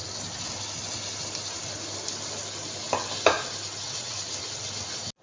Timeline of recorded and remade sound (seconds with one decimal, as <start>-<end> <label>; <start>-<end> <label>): 0.0-3.8 recorded; 3.8-4.3 remade; 4.3-5.2 recorded